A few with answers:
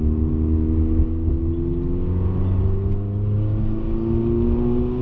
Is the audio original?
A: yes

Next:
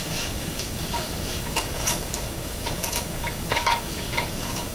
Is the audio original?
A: no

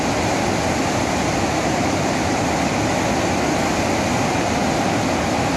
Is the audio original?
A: yes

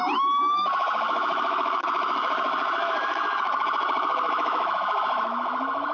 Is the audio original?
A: no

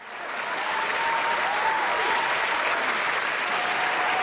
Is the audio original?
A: yes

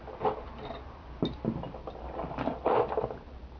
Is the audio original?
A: yes